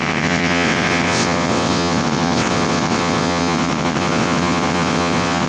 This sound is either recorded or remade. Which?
remade